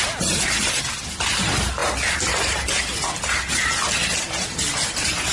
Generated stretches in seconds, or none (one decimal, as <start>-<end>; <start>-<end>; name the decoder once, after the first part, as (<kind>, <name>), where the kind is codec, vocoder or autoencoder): none